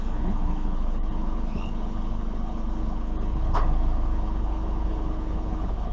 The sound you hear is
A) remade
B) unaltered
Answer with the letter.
A